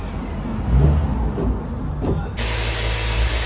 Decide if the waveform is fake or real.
real